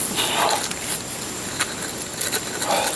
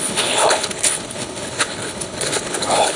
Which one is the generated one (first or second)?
second